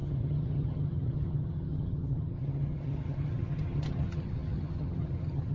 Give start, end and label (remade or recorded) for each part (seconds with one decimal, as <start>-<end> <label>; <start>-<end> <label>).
0.0-5.5 remade